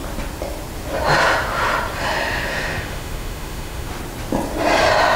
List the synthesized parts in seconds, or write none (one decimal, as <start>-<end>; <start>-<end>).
2.5-3.9

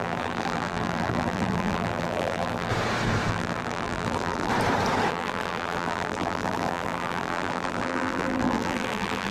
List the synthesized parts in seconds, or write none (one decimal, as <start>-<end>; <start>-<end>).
0.0-2.7; 3.3-4.5; 5.1-9.3